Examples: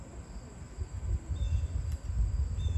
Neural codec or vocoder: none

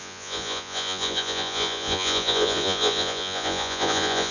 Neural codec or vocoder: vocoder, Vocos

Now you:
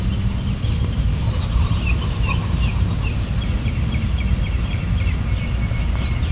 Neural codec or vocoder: vocoder, BigVGAN v2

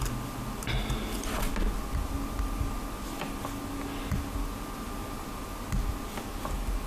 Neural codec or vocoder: none